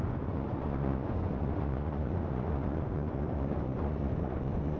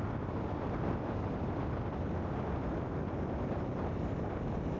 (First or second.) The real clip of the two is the second